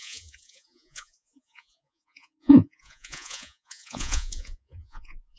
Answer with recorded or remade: remade